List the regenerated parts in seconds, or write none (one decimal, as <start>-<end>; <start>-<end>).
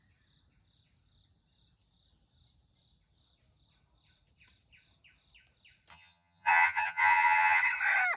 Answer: 5.9-7.6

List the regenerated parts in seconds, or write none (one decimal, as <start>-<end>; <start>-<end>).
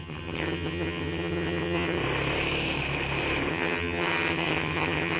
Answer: 0.0-2.0; 3.5-5.2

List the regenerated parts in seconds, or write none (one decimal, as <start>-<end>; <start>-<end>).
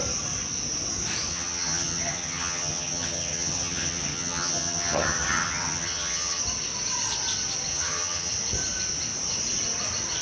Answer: 1.3-6.4; 7.7-8.3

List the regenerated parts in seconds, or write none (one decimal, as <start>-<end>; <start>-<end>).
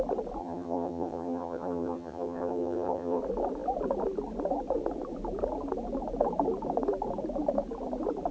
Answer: 0.4-3.2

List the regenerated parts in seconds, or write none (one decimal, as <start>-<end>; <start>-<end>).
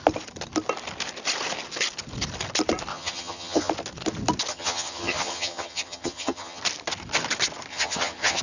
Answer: 2.9-3.7; 4.5-6.6; 7.7-8.4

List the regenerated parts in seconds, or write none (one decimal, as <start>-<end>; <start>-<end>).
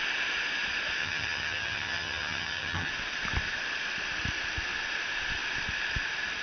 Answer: 1.0-2.9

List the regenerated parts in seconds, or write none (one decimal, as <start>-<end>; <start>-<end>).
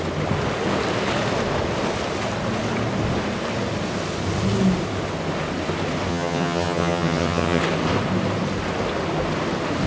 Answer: 6.1-7.6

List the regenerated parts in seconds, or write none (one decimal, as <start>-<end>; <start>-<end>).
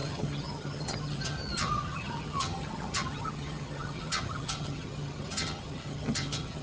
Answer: 0.0-6.6